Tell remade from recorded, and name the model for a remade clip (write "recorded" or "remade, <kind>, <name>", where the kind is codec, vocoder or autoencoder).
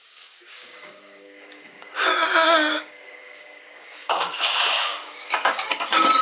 remade, codec, DAC